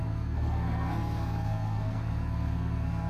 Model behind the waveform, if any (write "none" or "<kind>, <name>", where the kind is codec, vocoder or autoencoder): codec, SNAC